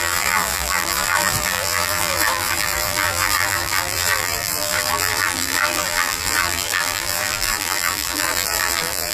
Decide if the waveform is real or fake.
fake